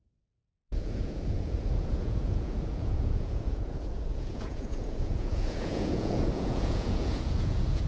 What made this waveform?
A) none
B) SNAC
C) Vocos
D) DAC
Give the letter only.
C